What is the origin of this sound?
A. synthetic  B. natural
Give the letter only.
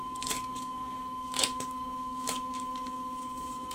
A